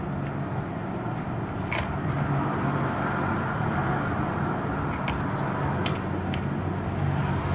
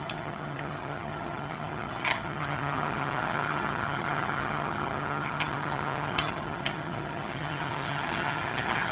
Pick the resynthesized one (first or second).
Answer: second